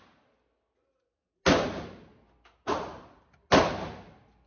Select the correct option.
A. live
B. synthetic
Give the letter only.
A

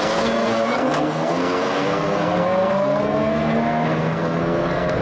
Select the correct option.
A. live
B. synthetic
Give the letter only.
B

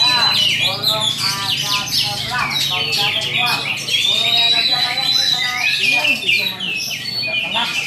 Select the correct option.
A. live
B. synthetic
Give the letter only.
A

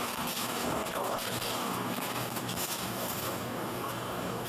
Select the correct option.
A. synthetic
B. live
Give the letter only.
A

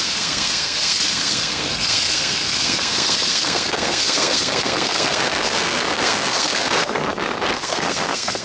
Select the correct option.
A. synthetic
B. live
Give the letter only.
A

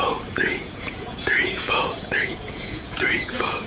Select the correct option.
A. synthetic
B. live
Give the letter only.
A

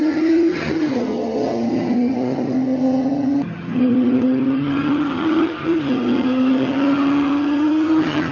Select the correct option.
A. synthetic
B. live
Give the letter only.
A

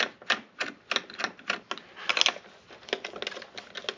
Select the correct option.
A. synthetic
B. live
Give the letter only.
B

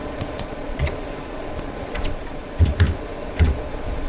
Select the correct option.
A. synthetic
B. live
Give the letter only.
A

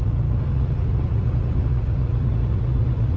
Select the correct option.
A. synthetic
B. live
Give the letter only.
A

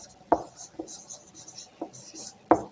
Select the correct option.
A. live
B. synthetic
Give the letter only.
A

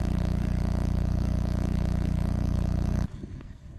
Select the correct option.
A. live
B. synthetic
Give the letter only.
B